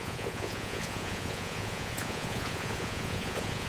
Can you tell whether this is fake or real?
fake